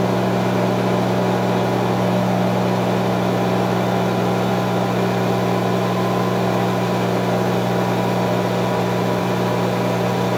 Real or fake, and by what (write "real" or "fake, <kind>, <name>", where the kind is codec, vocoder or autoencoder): real